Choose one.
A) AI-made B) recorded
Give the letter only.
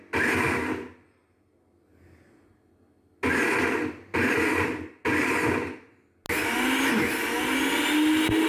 B